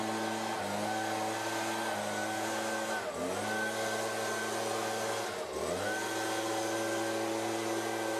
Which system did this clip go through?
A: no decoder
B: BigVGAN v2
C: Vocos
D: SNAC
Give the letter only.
A